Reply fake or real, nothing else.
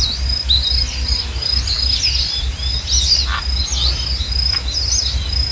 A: real